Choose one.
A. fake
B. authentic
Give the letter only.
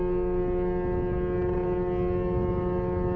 B